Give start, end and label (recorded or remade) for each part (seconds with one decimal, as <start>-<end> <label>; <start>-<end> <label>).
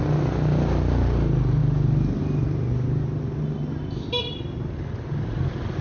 0.0-5.8 recorded